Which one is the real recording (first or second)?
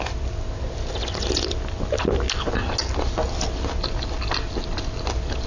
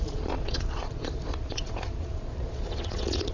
first